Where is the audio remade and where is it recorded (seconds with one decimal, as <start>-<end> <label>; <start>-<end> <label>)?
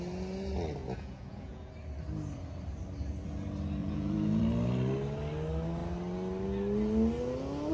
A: 0.0-0.8 recorded; 0.8-1.7 remade; 1.7-3.8 recorded; 3.8-4.4 remade; 4.4-7.7 recorded